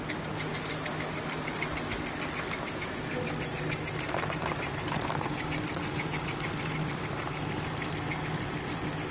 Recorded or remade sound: recorded